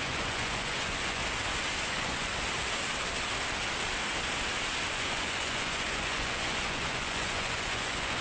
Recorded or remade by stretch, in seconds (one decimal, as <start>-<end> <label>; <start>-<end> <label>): 0.0-1.2 remade; 1.2-1.8 recorded; 1.8-2.3 remade; 2.3-4.9 recorded; 4.9-8.2 remade